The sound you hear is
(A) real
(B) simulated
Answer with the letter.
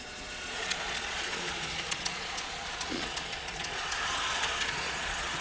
B